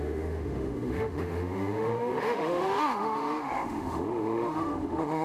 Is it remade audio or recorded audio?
remade